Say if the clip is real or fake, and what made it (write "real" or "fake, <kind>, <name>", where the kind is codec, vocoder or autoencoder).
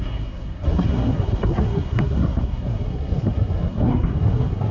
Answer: fake, codec, SNAC